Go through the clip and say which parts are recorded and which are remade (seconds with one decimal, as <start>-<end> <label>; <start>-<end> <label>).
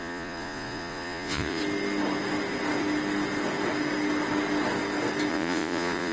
0.0-1.6 remade; 1.6-5.3 recorded; 5.3-6.1 remade